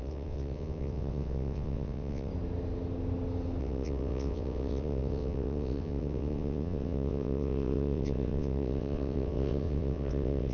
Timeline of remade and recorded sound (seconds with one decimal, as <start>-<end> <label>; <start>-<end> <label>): 0.0-2.3 remade; 2.3-3.6 recorded; 3.6-10.5 remade